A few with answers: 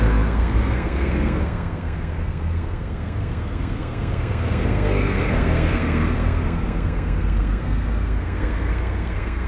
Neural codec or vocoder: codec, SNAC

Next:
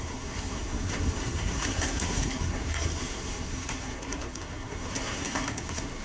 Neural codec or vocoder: codec, SNAC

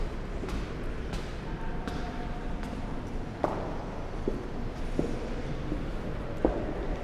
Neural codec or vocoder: none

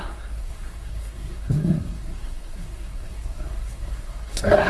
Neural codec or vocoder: codec, SNAC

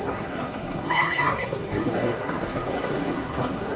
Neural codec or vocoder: codec, SNAC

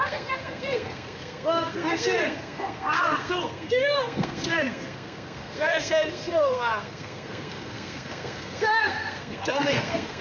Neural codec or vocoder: codec, SNAC